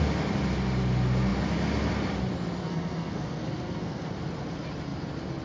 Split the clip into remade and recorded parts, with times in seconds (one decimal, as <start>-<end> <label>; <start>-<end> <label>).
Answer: 0.0-2.6 recorded; 2.6-4.1 remade; 4.1-5.4 recorded